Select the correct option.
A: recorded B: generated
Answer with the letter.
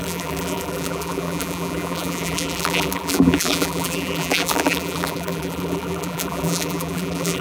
B